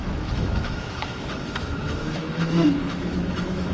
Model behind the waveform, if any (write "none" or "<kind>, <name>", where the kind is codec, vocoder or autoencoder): autoencoder, DAC-VAE